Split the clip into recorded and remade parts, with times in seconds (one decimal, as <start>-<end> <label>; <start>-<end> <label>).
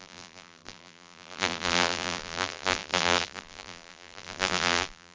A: 0.0-5.1 remade